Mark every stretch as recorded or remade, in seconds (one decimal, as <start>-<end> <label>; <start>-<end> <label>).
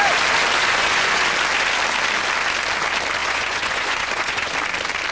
0.0-0.6 recorded; 0.6-1.2 remade; 1.2-3.2 recorded; 3.2-4.5 remade; 4.5-5.1 recorded